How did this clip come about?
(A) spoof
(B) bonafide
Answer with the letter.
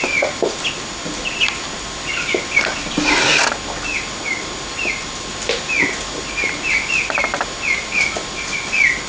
B